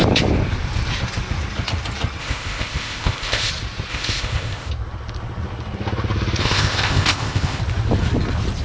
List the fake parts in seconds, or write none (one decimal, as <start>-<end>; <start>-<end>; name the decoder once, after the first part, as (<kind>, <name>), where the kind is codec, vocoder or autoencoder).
2.2-3.5 (codec, ZipCodec); 3.9-4.7; 6.4-7.6